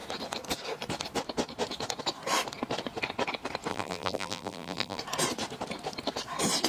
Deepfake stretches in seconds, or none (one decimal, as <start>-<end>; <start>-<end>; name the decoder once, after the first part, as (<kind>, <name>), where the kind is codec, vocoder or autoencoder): 3.7-5.0 (vocoder, BigVGAN v2)